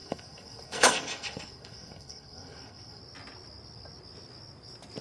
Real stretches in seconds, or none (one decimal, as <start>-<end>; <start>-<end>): 3.0-5.0